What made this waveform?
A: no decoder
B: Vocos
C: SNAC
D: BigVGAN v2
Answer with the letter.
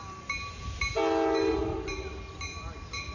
A